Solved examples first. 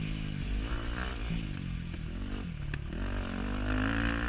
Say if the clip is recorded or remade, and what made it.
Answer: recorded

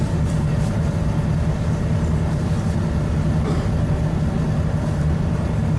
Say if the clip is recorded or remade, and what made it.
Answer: recorded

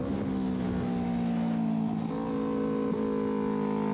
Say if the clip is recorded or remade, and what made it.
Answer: recorded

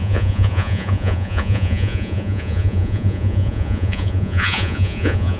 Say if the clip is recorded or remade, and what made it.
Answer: remade, vocoder, Vocos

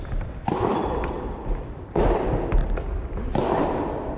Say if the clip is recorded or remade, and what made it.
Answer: recorded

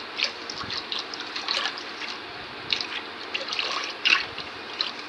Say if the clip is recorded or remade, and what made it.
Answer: recorded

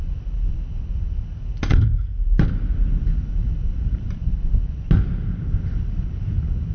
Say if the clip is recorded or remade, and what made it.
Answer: recorded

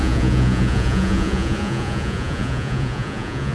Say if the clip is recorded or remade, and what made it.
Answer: remade, vocoder, Vocos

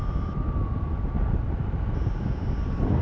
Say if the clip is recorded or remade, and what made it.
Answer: recorded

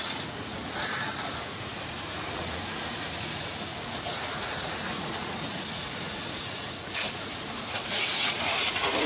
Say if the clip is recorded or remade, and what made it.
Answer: remade, vocoder, Vocos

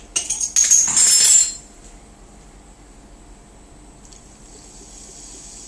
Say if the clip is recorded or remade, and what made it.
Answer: recorded